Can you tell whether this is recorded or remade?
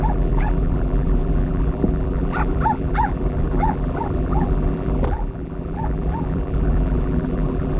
remade